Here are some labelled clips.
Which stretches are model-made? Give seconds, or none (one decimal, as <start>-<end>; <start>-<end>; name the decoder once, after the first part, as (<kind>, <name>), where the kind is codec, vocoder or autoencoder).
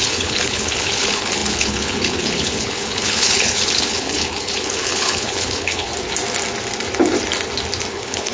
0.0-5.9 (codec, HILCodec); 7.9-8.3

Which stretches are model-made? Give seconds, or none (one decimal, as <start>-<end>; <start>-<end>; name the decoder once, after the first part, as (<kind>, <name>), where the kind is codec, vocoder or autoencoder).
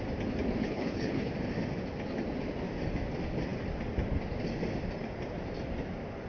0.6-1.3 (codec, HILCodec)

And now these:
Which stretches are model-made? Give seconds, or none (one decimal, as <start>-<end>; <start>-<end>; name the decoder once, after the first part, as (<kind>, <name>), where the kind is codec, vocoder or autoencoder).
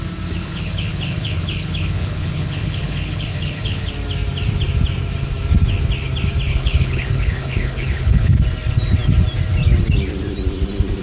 0.4-3.9 (codec, HILCodec); 6.5-8.3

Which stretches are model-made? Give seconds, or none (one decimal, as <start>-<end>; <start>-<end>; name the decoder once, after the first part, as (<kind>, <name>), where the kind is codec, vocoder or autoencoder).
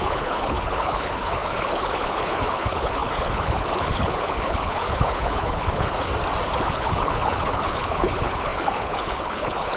0.0-6.1 (codec, HILCodec); 6.6-9.8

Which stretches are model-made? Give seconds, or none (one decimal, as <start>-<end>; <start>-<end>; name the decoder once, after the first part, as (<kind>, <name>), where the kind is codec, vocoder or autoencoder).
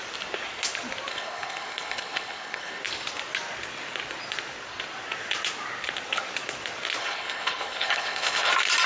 1.1-2.8 (codec, HILCodec); 7.0-8.5